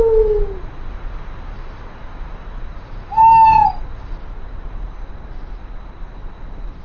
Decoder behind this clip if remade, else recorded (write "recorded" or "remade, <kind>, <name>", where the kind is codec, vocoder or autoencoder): recorded